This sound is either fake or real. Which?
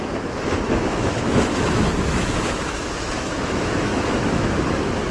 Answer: fake